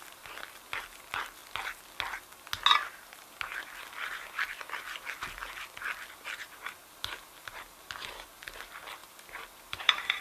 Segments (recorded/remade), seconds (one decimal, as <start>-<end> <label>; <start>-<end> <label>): 0.0-7.5 recorded; 7.5-8.3 remade; 8.3-9.0 recorded; 9.0-10.2 remade